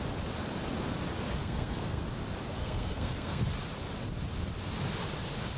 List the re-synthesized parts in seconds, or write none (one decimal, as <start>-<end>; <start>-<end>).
1.4-2.0; 2.6-3.4